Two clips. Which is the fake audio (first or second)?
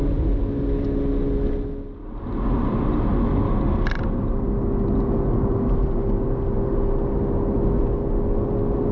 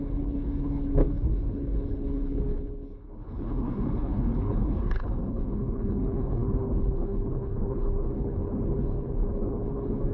second